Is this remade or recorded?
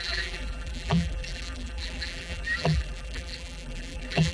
remade